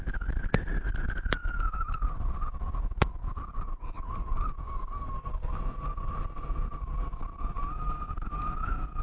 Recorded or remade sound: recorded